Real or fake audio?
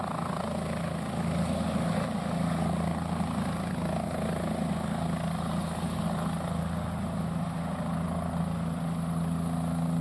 real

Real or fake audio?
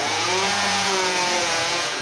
fake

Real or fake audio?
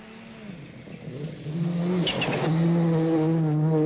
real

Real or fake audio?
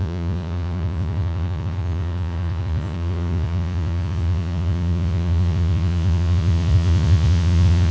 fake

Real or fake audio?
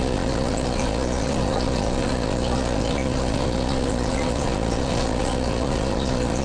fake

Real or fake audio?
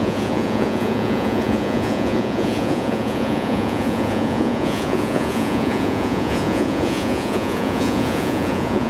fake